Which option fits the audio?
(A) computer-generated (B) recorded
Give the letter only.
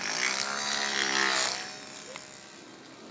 B